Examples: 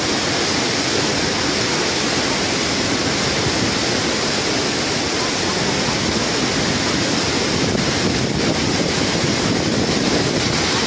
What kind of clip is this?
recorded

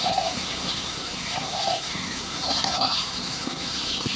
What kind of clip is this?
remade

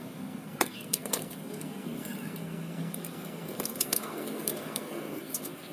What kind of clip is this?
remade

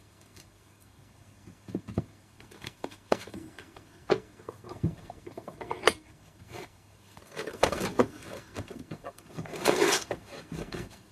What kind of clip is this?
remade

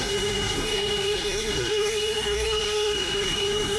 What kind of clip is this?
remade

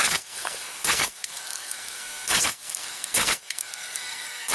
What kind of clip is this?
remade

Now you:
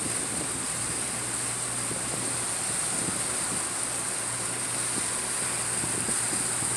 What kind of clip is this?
recorded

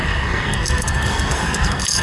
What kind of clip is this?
remade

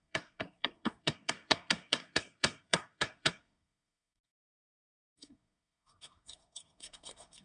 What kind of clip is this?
remade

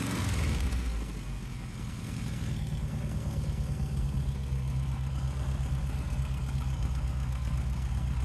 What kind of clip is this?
remade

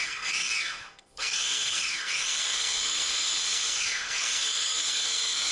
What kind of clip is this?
remade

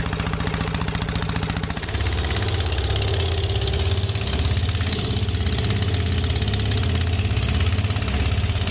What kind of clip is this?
recorded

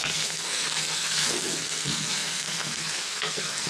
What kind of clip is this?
remade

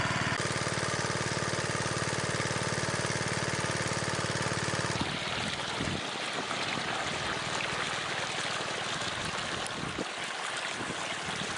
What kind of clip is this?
recorded